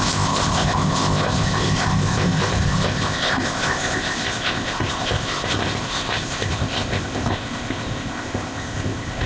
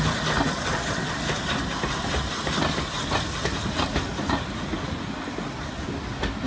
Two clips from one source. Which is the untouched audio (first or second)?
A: second